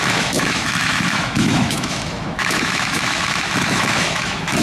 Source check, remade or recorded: remade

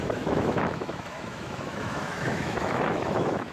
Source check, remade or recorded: remade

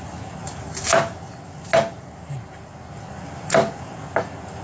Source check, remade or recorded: recorded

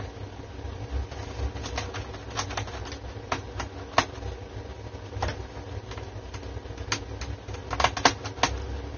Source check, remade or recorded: recorded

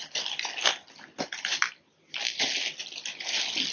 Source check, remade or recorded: recorded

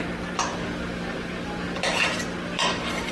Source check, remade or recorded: recorded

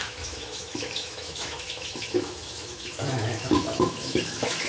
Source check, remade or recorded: remade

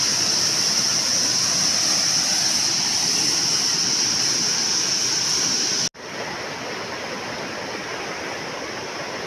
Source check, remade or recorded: recorded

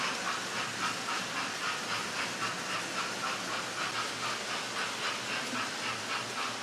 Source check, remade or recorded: recorded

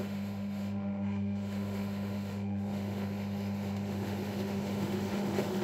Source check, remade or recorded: remade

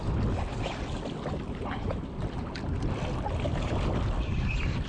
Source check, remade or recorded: recorded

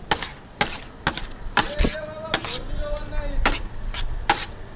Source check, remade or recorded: recorded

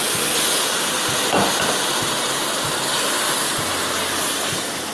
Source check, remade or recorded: recorded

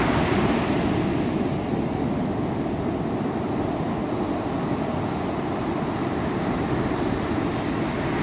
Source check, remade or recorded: recorded